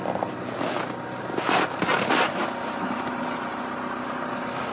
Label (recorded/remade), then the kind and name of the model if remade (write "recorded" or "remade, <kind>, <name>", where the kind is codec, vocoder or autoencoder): recorded